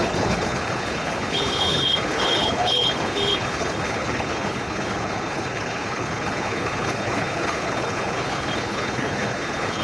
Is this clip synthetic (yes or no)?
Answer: yes